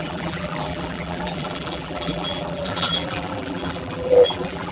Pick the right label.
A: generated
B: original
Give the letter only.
A